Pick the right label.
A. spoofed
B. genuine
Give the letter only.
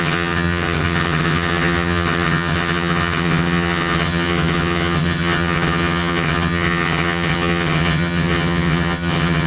A